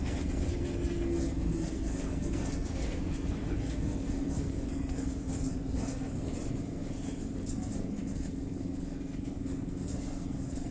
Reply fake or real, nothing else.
fake